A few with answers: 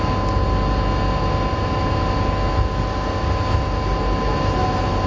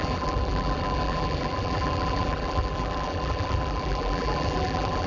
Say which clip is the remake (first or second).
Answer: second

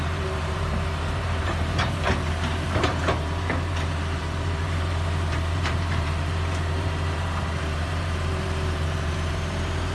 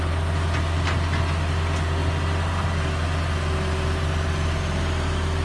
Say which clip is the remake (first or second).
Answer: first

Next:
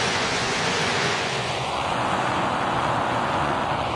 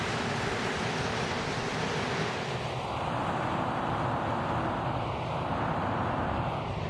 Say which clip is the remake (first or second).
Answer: first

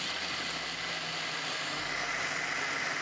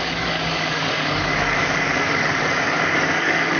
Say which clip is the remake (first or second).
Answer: second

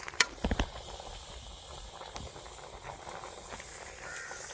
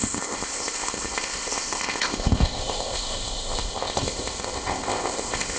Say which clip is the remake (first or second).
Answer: second